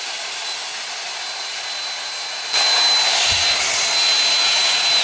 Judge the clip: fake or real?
real